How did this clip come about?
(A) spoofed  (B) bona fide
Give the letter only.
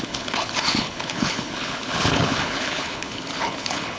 A